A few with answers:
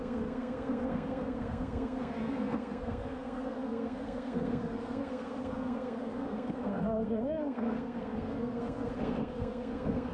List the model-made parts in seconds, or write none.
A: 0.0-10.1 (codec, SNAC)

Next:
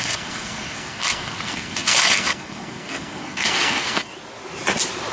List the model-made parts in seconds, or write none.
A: 0.0-4.1 (codec, SNAC)

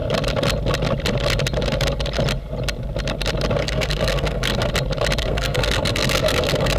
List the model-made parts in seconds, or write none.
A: 3.6-4.7 (codec, SNAC); 5.2-6.8

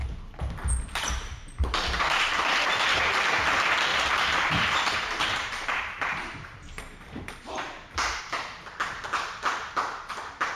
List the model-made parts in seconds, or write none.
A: 3.9-8.2 (vocoder, BigVGAN v2)

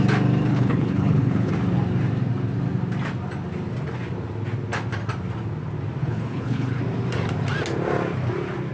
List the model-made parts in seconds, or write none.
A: 0.5-1.5 (codec, HILCodec); 6.0-6.8